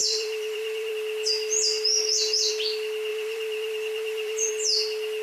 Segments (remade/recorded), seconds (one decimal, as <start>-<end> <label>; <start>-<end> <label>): 0.0-0.9 remade; 0.9-3.1 recorded; 3.1-4.5 remade; 4.5-5.2 recorded